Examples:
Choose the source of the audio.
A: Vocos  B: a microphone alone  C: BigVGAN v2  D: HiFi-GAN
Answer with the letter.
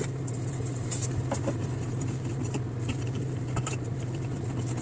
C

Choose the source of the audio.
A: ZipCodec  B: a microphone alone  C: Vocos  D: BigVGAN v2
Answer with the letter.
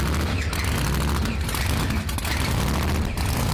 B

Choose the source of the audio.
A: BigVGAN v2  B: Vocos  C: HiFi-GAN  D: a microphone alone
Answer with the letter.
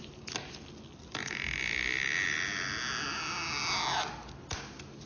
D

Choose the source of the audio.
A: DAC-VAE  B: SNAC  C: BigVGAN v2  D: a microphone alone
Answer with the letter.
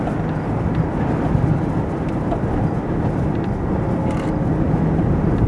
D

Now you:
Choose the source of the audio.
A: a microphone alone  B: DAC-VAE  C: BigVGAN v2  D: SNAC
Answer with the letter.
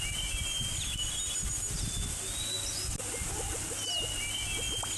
A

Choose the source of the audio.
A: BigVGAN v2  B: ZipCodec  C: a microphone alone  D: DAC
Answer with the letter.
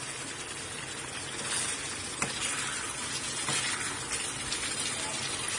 C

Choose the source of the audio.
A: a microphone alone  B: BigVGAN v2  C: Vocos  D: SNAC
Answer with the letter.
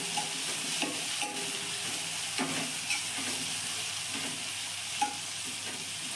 A